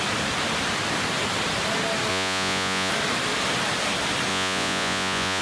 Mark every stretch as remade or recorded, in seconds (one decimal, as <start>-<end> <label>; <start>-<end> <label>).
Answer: 0.0-2.1 recorded; 2.1-2.9 remade; 2.9-4.3 recorded; 4.3-5.4 remade